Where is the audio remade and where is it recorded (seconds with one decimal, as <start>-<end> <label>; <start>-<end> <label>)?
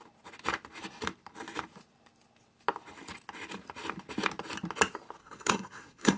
0.0-5.2 recorded; 5.2-6.2 remade